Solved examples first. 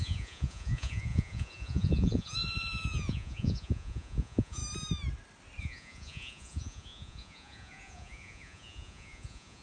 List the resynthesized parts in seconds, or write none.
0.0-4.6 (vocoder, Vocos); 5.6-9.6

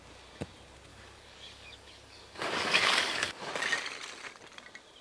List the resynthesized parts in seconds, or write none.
0.9-3.5 (codec, DAC)

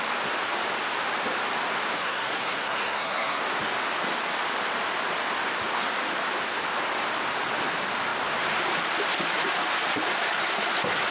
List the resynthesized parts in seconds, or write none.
2.0-3.4 (codec, SNAC)

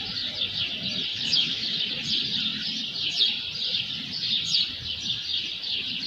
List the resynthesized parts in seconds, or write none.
1.1-1.9 (autoencoder, DAC-VAE)